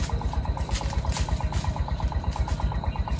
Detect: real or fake real